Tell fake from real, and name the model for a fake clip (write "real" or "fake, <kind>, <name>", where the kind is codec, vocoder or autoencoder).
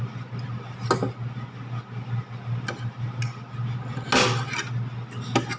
real